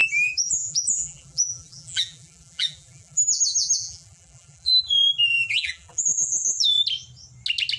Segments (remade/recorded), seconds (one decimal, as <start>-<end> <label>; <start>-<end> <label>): 0.0-4.7 remade; 4.7-5.3 recorded; 5.3-6.0 remade; 6.0-7.8 recorded